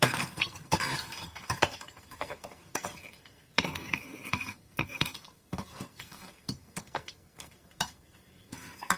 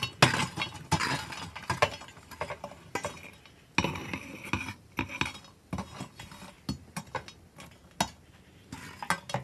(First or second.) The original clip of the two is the second